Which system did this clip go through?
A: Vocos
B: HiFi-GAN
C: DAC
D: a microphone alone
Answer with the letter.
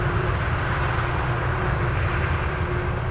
D